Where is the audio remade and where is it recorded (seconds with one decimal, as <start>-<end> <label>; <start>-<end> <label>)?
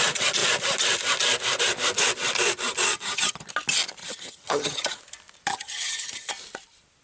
0.0-2.9 recorded; 2.9-3.5 remade; 3.5-4.0 recorded; 4.0-5.0 remade; 5.0-5.5 recorded; 5.5-6.3 remade; 6.3-7.0 recorded